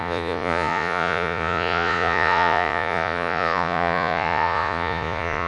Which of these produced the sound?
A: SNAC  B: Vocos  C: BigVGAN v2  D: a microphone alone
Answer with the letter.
B